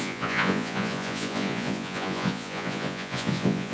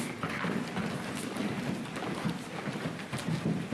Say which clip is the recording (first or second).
second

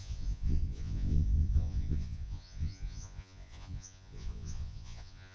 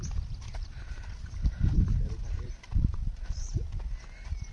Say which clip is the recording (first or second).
second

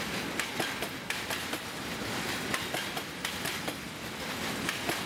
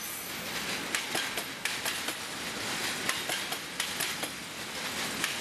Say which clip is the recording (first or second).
second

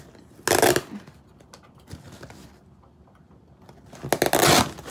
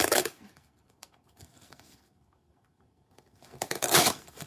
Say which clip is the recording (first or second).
first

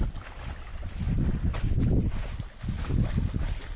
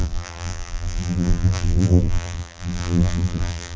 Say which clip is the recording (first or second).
first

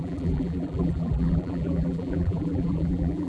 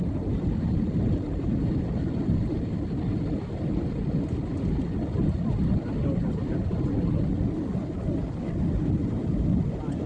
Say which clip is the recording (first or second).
second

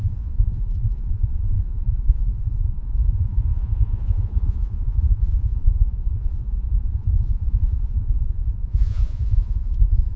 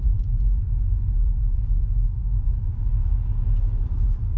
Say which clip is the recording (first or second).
second